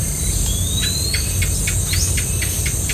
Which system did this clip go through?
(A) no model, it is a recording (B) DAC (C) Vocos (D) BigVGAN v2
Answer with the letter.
A